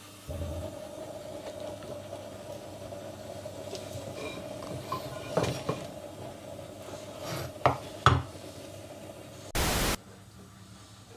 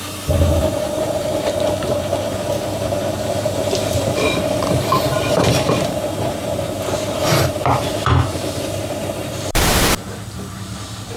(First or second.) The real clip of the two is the first